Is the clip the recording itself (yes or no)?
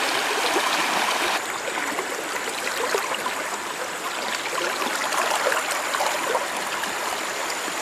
yes